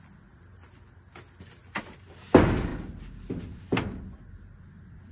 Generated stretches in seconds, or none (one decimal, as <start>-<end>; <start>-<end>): none